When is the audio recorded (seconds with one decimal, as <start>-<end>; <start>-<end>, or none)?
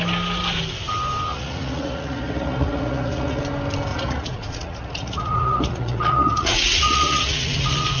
0.0-1.3; 3.4-3.9